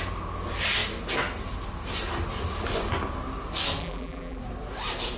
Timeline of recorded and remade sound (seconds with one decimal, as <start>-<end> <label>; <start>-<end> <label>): 0.0-3.8 recorded; 3.8-4.4 remade; 4.4-5.2 recorded